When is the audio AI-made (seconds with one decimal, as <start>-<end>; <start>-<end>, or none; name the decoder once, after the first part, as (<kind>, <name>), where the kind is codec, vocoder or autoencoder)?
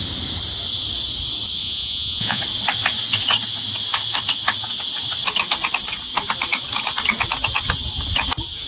1.6-2.4 (vocoder, Vocos)